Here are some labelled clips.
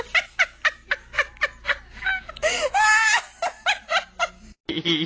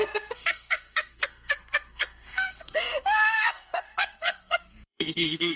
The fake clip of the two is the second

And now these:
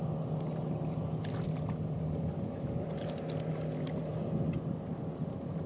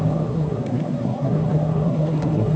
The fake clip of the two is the second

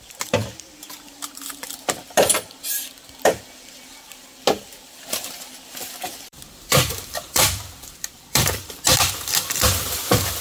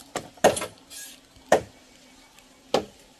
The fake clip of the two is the first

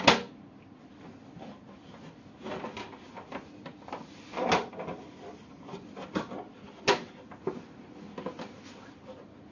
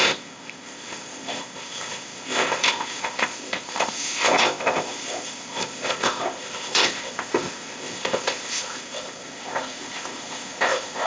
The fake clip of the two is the second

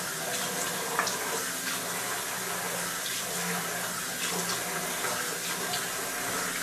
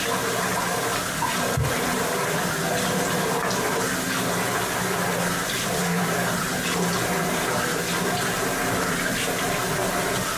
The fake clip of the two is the second